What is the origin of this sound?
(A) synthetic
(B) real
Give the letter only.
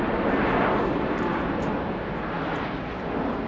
B